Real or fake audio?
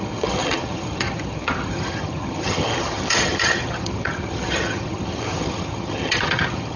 fake